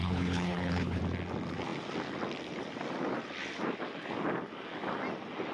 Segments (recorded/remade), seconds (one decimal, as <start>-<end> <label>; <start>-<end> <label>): 0.0-1.0 remade; 1.0-5.5 recorded